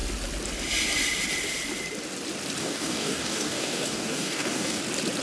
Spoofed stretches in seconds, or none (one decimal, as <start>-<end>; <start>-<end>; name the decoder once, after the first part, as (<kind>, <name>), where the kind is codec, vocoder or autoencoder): 2.6-4.8 (codec, DAC)